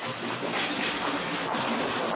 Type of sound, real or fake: fake